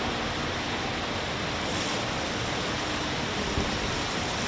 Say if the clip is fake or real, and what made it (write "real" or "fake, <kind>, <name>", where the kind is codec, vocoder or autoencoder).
real